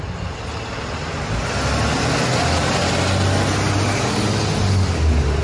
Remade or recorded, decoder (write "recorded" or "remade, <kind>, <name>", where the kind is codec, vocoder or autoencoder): recorded